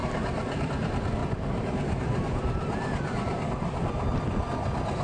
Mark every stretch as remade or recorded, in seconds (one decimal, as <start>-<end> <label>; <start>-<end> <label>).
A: 0.0-0.7 remade; 0.7-1.2 recorded; 1.2-4.2 remade; 4.2-5.0 recorded